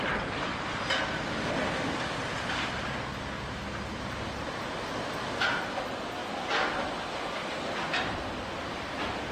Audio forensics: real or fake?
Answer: real